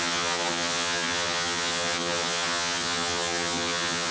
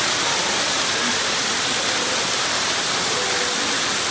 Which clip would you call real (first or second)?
second